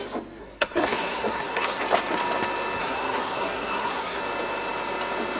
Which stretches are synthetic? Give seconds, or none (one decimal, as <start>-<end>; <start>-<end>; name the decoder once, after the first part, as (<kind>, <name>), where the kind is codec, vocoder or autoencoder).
0.4-1.8 (codec, SNAC); 2.8-4.2